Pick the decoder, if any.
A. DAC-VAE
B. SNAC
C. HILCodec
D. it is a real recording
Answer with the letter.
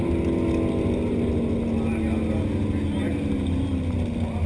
D